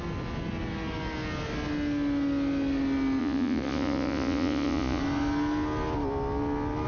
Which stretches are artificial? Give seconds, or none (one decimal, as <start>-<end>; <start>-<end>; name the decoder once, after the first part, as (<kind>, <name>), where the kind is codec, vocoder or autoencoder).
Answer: 3.2-5.0 (vocoder, Vocos)